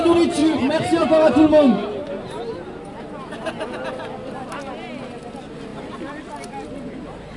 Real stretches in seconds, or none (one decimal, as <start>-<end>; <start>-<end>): 0.0-0.4; 1.0-5.7; 6.3-7.4